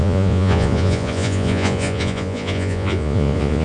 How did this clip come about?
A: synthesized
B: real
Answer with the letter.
A